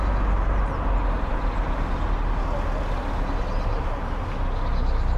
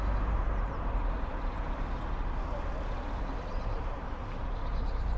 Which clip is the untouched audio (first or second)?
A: first